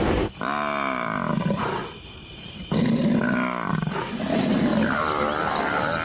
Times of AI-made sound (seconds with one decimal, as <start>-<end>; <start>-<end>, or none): none